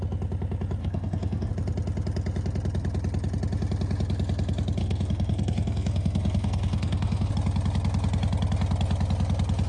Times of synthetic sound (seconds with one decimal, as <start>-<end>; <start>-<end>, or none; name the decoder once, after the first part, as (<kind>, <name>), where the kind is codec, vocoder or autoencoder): 0.8-1.5 (codec, SNAC); 4.8-7.3